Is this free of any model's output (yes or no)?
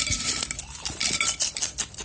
no